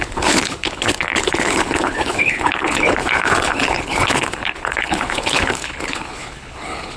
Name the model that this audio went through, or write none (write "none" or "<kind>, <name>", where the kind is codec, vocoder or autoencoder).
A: codec, HILCodec